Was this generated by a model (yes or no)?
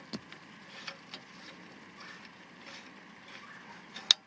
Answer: no